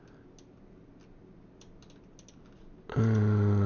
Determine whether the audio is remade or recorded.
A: recorded